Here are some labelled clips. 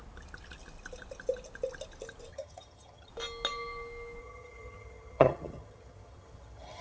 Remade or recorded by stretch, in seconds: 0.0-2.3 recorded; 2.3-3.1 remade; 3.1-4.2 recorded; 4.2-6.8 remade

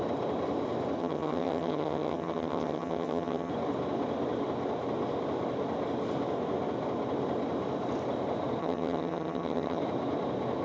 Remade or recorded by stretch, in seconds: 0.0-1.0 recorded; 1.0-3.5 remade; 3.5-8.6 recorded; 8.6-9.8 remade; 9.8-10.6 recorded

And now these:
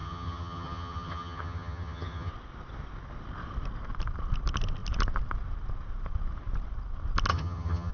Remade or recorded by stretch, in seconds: 0.0-2.3 remade; 2.3-7.3 recorded; 7.3-7.9 remade

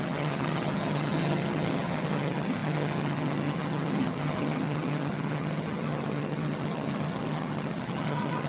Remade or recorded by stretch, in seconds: 0.0-8.5 remade

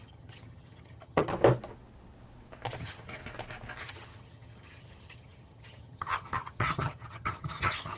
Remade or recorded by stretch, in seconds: 0.0-1.3 remade; 1.3-2.8 recorded; 2.8-3.2 remade; 3.2-3.8 recorded; 3.8-8.0 remade

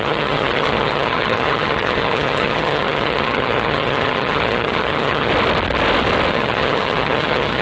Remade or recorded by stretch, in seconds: 0.0-5.3 remade; 5.3-6.3 recorded; 6.3-7.6 remade